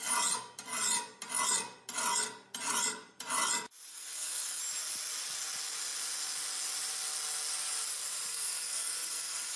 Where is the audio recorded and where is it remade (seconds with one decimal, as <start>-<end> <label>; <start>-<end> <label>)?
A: 0.0-3.9 recorded; 3.9-4.6 remade; 4.6-8.3 recorded; 8.3-9.6 remade